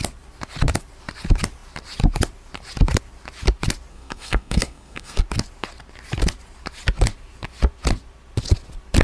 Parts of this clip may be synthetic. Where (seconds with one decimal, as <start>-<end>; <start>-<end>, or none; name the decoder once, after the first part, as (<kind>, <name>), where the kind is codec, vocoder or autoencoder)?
3.9-5.2 (codec, SNAC)